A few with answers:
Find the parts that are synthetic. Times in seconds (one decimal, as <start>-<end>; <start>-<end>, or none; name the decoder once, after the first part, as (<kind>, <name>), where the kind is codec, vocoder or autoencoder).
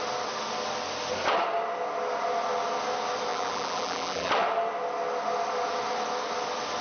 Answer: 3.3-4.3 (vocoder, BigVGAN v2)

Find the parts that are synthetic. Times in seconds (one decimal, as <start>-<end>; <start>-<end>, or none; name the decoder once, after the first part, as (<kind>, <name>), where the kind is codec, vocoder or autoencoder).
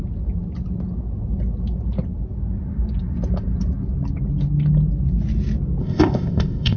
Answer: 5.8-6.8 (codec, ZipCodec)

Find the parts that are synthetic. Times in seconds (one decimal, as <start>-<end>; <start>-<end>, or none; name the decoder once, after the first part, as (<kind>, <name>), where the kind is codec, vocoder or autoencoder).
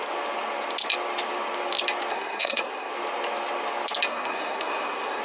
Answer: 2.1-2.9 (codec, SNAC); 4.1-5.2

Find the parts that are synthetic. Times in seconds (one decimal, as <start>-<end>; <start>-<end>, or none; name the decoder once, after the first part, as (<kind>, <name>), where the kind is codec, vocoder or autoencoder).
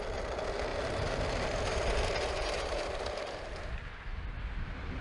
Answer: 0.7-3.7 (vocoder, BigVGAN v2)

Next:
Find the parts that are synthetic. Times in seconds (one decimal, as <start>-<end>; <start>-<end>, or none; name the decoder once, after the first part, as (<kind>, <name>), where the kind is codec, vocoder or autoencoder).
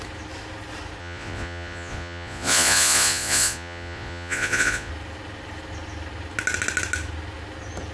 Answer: 1.0-4.9 (vocoder, Vocos)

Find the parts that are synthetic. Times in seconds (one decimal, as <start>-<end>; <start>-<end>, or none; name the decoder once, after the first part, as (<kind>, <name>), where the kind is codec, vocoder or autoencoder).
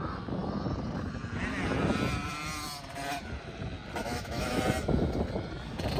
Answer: 4.0-4.6 (autoencoder, DAC-VAE)